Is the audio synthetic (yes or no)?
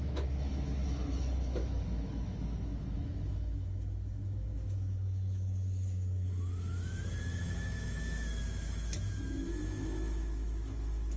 yes